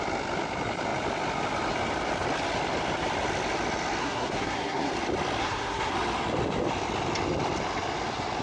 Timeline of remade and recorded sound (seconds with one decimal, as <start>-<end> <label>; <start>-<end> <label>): 0.0-4.0 recorded; 4.0-4.9 remade; 4.9-5.4 recorded; 5.4-5.9 remade; 5.9-8.4 recorded